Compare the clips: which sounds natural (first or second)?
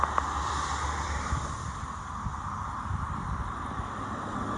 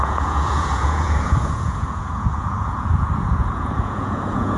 first